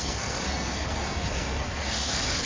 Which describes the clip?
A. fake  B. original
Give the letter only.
A